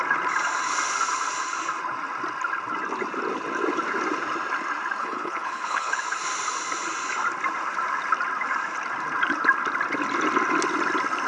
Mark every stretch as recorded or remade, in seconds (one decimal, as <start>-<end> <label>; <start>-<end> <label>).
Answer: 0.0-5.0 recorded; 5.0-6.0 remade; 6.0-11.3 recorded